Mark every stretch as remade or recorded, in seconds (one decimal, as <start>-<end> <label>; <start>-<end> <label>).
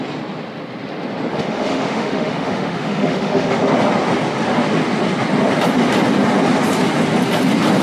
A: 0.0-1.3 recorded; 1.3-3.6 remade; 3.6-7.8 recorded